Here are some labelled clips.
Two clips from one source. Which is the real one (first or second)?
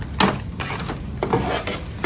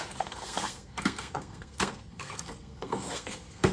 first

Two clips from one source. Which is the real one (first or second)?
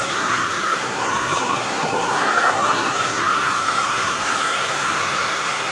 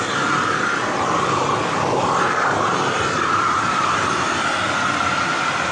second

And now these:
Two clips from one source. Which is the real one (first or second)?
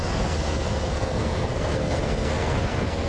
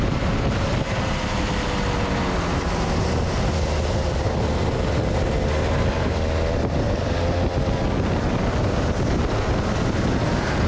second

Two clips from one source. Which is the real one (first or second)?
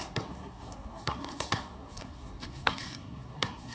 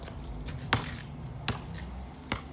second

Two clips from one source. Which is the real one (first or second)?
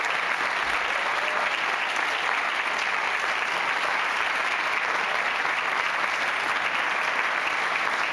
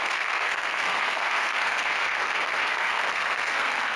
first